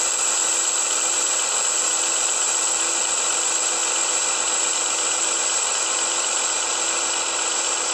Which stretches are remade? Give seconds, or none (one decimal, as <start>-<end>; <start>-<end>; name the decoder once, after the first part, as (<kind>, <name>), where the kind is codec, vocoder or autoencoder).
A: 3.8-5.8 (vocoder, BigVGAN v2)